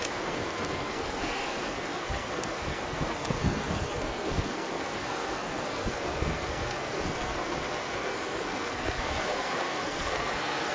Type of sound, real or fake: fake